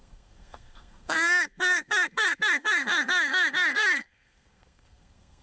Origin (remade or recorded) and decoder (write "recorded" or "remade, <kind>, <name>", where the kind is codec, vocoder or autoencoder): remade, codec, SNAC